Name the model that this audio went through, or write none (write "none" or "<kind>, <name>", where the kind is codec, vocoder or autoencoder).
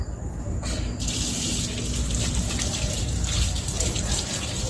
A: vocoder, BigVGAN v2